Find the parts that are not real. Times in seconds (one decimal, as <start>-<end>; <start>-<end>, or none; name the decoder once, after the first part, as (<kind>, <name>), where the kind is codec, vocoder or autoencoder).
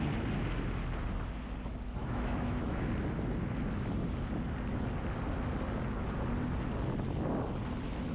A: 2.0-2.9 (autoencoder, DAC-VAE)